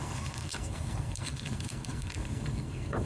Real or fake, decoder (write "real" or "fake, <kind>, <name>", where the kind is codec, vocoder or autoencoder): fake, codec, SNAC